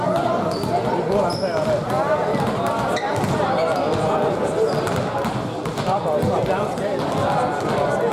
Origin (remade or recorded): recorded